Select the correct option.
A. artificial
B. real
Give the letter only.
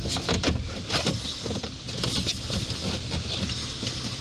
B